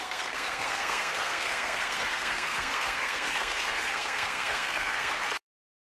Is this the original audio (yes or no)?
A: no